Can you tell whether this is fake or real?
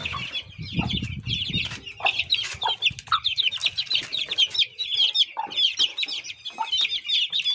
real